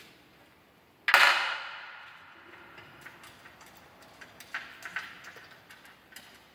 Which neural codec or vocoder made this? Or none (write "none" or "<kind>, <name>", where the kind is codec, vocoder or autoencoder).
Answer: none